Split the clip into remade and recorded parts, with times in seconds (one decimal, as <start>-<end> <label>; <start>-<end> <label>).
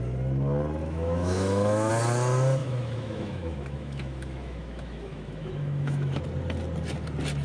0.0-0.8 recorded; 0.8-1.9 remade; 1.9-2.6 recorded; 2.6-6.2 remade; 6.2-7.4 recorded